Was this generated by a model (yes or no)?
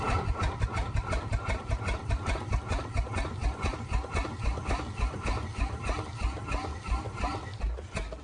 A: no